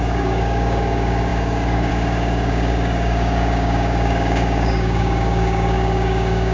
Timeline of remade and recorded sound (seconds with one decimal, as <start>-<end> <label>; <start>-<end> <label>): 0.0-6.5 remade